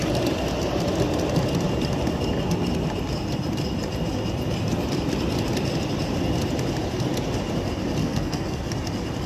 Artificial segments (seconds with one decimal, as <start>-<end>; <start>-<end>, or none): 8.0-8.7